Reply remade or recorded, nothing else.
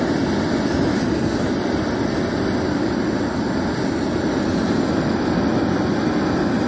recorded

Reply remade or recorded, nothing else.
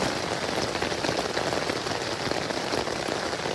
recorded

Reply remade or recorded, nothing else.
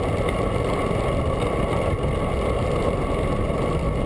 recorded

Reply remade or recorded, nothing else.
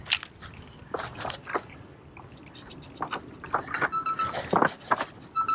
recorded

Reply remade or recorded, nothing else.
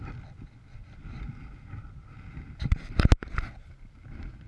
recorded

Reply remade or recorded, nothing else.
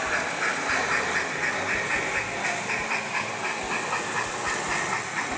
recorded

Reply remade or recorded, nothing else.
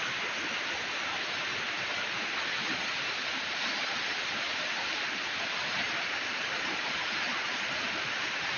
recorded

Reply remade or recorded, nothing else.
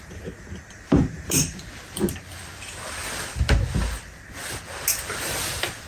recorded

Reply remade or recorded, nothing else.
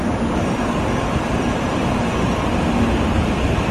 remade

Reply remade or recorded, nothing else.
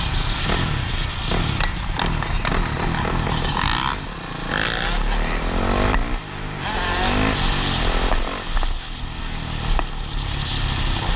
recorded